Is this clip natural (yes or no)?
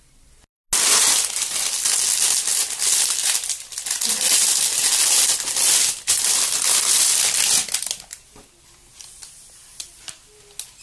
yes